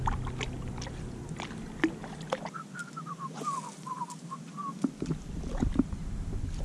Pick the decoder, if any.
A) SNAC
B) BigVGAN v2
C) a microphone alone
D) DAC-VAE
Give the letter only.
C